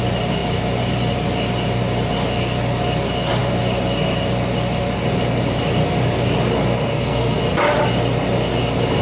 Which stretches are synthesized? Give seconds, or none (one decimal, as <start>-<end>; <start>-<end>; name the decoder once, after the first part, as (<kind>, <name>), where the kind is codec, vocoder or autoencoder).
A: 6.9-7.4 (codec, SNAC)